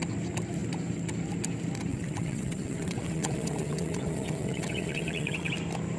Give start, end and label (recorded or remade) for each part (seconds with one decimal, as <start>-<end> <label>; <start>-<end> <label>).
0.0-1.9 recorded; 1.9-5.5 remade; 5.5-6.0 recorded